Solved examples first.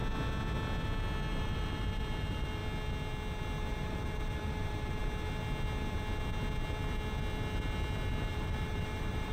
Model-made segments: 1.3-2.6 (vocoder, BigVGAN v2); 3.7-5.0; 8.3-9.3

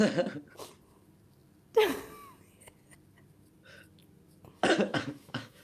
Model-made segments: 4.9-5.6 (autoencoder, DAC-VAE)

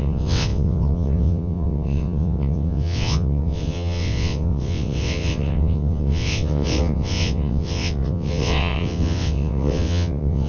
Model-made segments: 0.0-10.5 (vocoder, WaveNeXt)

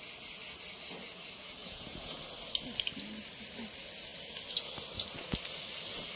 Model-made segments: 1.6-2.2 (vocoder, Vocos)

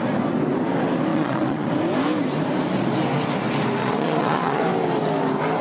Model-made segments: 1.1-1.7 (vocoder, Vocos); 3.8-4.6

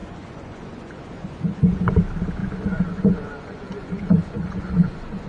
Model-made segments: 0.0-2.0 (vocoder, Vocos); 2.4-5.3

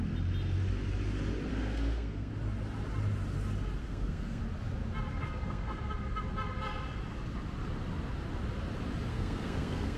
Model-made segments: 1.5-2.3 (codec, SNAC); 3.8-4.4; 5.2-5.8; 9.1-10.0